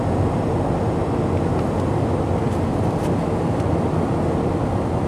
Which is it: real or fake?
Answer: real